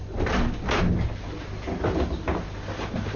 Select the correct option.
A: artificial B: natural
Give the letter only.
B